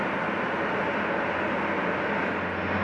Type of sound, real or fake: real